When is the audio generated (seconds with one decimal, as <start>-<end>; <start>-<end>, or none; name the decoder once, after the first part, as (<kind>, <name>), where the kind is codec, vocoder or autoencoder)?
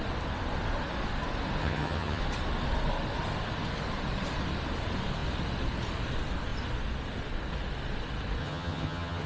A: 1.6-2.2 (vocoder, HiFi-GAN); 8.4-9.3